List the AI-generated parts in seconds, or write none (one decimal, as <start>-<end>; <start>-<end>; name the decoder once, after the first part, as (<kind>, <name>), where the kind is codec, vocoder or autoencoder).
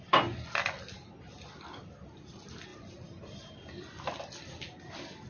none